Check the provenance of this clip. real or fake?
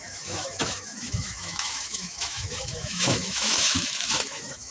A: fake